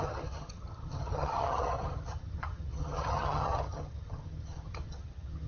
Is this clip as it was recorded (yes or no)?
no